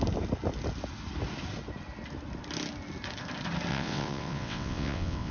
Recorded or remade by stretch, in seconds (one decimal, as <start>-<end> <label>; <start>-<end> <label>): 0.0-3.7 recorded; 3.7-5.3 remade